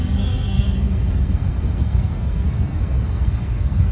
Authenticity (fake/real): fake